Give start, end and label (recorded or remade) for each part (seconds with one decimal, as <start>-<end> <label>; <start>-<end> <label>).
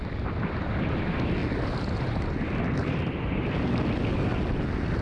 0.0-5.0 recorded